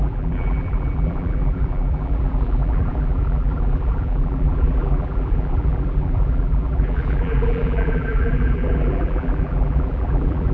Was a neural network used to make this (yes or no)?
yes